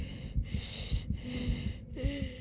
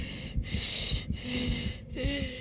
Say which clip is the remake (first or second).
second